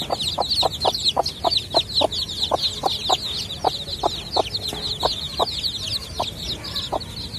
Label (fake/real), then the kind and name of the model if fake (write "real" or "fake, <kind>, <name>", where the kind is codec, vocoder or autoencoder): real